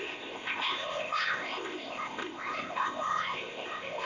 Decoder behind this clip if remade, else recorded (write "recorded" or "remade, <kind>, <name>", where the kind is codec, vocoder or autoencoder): remade, codec, ZipCodec